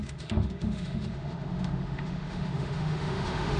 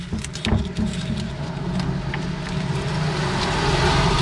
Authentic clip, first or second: second